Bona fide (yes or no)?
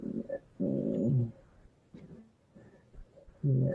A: yes